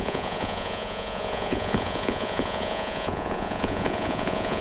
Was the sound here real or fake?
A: fake